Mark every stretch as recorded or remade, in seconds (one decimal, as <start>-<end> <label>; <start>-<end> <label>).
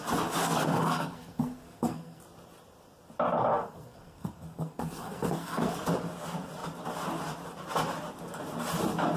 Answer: 0.0-0.4 recorded; 0.4-2.2 remade; 2.2-3.5 recorded; 3.5-5.7 remade; 5.7-9.2 recorded